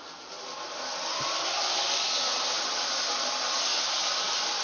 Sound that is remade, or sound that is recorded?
recorded